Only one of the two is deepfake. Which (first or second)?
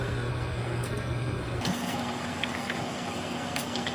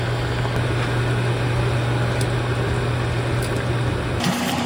first